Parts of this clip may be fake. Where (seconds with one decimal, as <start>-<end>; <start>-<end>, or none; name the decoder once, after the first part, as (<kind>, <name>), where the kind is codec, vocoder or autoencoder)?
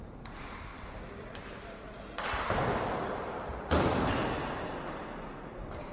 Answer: 0.0-0.7 (vocoder, BigVGAN v2); 1.3-5.9